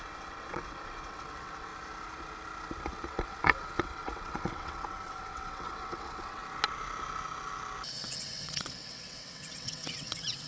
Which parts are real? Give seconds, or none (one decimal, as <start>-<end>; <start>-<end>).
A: 1.7-2.9; 6.4-7.9